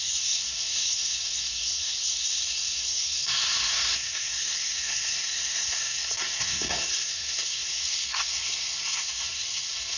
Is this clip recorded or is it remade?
remade